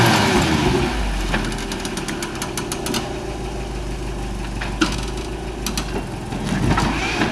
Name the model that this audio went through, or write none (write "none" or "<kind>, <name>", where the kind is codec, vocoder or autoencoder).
none